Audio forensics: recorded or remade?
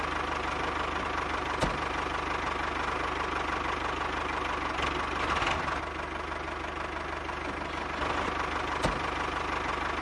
recorded